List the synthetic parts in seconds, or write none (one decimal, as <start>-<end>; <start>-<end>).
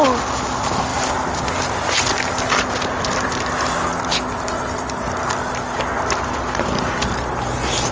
4.1-7.2